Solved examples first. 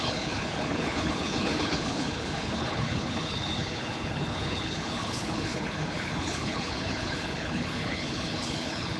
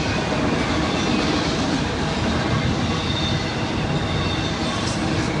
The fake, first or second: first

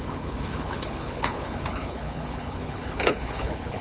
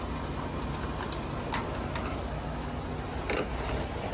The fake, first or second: first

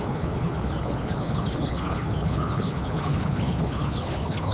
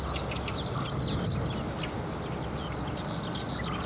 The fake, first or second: first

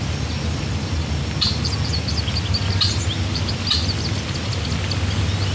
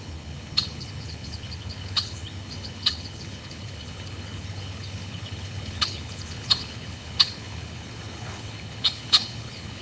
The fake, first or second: second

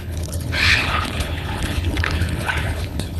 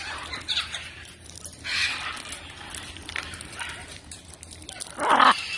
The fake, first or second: first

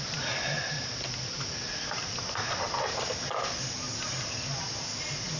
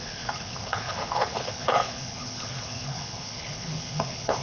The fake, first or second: second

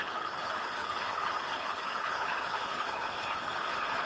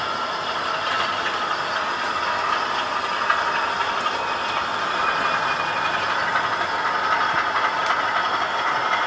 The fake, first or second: first